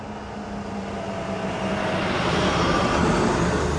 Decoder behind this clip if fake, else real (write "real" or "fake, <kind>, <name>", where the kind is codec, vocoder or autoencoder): real